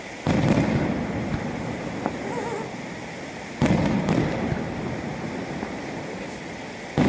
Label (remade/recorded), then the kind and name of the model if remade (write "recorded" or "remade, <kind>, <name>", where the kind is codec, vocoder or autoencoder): recorded